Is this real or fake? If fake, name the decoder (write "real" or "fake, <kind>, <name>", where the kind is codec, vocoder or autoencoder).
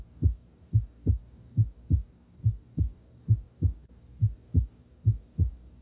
fake, codec, DAC